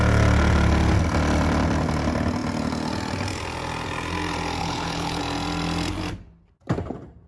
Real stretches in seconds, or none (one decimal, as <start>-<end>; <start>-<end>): 0.0-4.6; 5.2-7.3